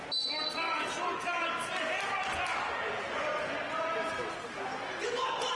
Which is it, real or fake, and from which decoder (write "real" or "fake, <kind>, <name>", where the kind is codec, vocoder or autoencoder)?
real